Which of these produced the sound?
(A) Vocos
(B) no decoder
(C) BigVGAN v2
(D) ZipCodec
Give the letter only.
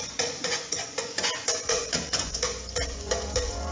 A